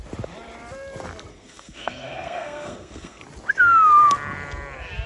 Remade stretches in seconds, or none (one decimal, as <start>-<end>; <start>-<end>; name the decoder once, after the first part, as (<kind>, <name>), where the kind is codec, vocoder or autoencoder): 1.3-3.2 (codec, SNAC)